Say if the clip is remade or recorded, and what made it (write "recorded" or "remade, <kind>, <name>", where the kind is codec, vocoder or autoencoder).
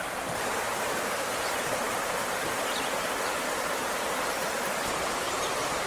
remade, vocoder, BigVGAN v2